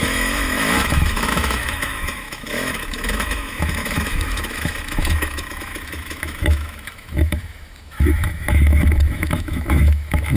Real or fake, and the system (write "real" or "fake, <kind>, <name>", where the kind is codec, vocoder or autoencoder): fake, autoencoder, DAC-VAE